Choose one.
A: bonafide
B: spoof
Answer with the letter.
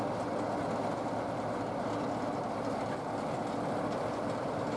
A